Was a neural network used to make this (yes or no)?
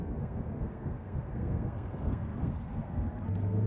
yes